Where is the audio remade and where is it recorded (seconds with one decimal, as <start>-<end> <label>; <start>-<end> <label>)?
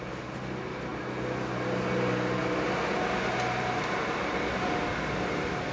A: 0.0-5.7 recorded